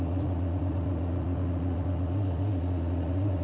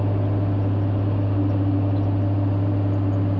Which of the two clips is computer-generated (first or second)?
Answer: first